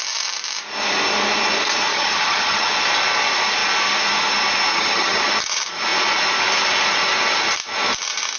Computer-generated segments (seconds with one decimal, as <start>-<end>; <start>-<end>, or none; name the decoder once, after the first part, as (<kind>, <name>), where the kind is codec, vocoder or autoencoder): 1.9-2.7 (vocoder, HiFi-GAN); 4.7-5.3